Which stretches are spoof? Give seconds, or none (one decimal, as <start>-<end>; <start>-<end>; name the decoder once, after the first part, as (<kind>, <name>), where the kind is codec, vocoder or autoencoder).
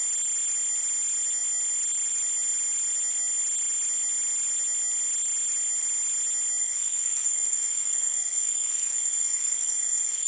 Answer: 6.6-10.3 (codec, SNAC)